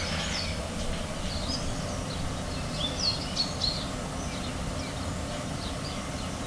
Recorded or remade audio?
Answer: recorded